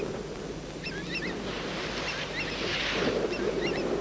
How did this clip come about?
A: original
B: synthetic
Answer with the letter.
A